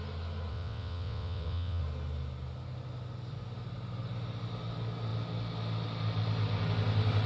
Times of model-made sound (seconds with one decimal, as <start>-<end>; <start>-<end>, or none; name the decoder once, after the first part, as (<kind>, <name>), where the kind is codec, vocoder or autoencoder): 0.5-1.8 (vocoder, WaveNeXt)